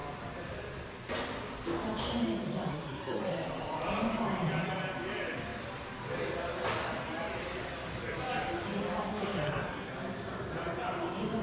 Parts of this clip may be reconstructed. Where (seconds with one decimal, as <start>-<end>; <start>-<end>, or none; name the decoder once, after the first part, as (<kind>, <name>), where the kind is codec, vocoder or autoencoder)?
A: 2.7-3.3 (codec, SNAC); 9.1-9.9